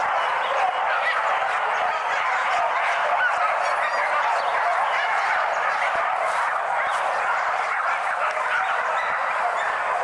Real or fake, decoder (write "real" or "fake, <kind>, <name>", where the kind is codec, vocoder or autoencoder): real